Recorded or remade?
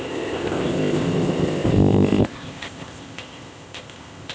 remade